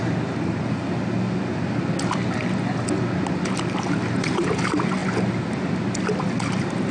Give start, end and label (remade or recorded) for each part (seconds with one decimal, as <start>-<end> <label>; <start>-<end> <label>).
0.0-6.9 recorded

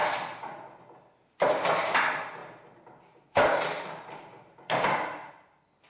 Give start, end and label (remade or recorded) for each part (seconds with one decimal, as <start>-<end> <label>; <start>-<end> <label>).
0.0-5.9 recorded

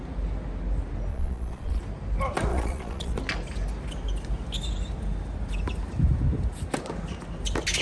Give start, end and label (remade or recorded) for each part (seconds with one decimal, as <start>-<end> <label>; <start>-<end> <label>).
0.0-1.1 recorded; 1.1-1.8 remade; 1.8-2.5 recorded; 2.5-3.2 remade; 3.2-7.8 recorded

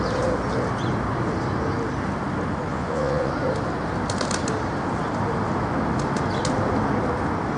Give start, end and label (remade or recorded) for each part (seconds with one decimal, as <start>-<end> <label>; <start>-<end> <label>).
0.0-2.7 recorded; 2.7-3.3 remade; 3.3-7.6 recorded